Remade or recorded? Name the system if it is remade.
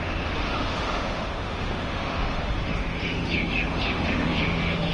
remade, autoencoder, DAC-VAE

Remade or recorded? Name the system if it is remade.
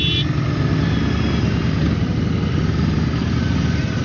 recorded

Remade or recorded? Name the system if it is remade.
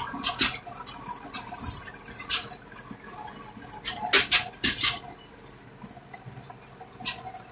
recorded